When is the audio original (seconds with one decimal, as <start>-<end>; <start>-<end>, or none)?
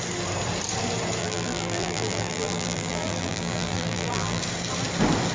0.0-1.2; 4.4-5.3